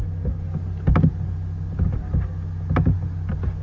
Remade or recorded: recorded